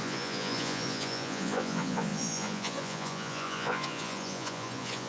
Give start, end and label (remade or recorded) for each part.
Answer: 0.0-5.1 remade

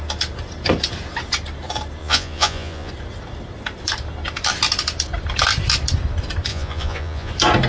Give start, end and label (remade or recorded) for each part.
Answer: 0.0-2.0 recorded; 2.0-2.9 remade; 2.9-6.5 recorded; 6.5-7.3 remade; 7.3-7.7 recorded

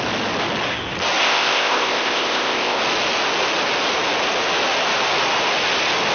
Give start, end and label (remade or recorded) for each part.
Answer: 0.0-1.2 recorded; 1.2-2.8 remade; 2.8-6.1 recorded

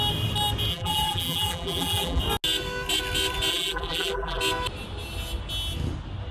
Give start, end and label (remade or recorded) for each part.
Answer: 0.0-0.7 recorded; 0.7-2.2 remade; 2.2-3.5 recorded; 3.5-4.4 remade; 4.4-6.3 recorded

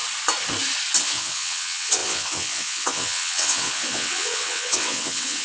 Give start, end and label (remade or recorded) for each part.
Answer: 0.0-1.0 recorded; 1.0-5.4 remade